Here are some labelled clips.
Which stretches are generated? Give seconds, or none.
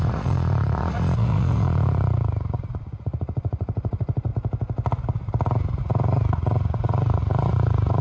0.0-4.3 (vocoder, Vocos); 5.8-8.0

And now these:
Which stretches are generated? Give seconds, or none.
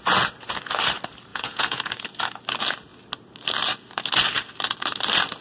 1.3-1.9 (vocoder, Vocos)